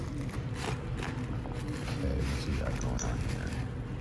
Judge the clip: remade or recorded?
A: recorded